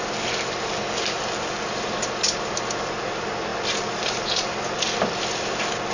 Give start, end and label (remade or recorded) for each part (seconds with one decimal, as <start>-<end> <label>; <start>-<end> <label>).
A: 0.0-5.9 recorded